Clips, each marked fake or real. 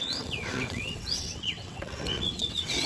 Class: fake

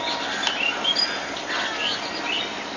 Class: real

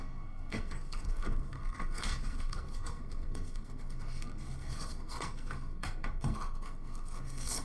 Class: fake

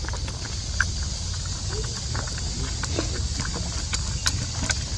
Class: real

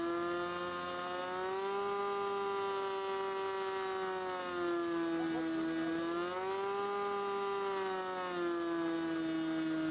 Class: real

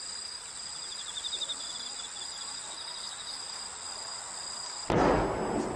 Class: real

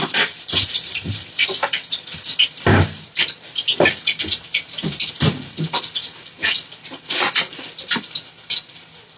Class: real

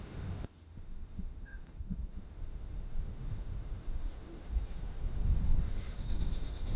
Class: fake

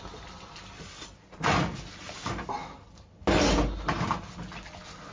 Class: real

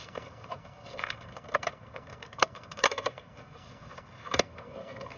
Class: fake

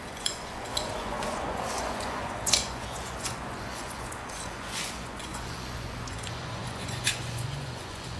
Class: fake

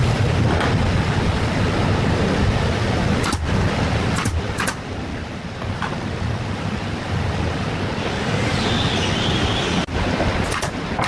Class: real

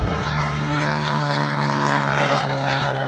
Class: fake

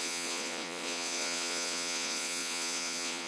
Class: fake